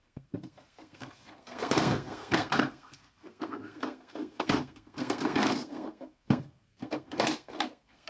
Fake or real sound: fake